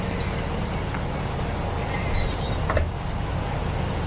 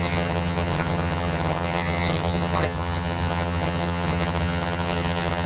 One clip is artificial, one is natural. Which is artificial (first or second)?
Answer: second